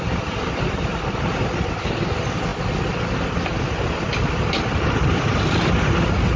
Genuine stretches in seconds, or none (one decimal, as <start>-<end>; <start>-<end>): 0.0-6.4